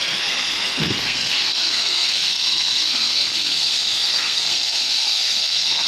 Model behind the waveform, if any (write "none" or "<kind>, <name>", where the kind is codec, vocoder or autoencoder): codec, SNAC